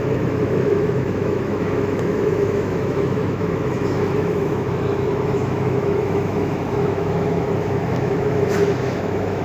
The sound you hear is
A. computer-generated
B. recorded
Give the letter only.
A